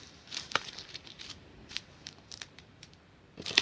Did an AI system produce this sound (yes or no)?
yes